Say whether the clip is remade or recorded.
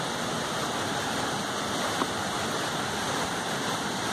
recorded